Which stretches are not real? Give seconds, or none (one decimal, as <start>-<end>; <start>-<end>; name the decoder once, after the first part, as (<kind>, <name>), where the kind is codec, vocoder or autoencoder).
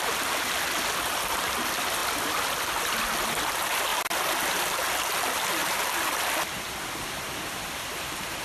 none